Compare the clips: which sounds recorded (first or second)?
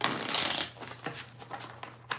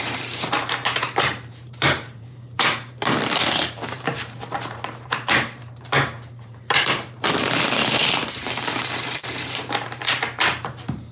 first